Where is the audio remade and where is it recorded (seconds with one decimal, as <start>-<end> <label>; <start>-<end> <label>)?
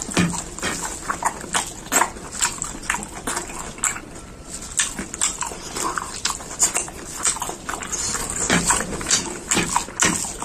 0.0-8.2 recorded; 8.2-9.1 remade; 9.1-10.4 recorded